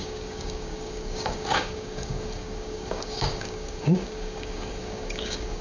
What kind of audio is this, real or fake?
fake